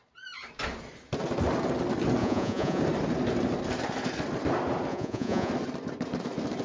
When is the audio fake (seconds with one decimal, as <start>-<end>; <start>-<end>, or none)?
2.2-2.8; 4.9-5.5